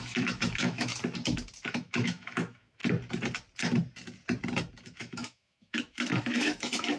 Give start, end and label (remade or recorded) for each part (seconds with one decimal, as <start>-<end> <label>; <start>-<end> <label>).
0.0-0.9 remade; 0.9-1.7 recorded; 1.7-2.8 remade; 2.8-4.8 recorded; 4.8-7.0 remade